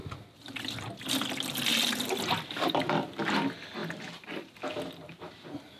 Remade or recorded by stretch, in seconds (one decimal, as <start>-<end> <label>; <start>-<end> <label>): 0.0-3.8 recorded; 3.8-5.8 remade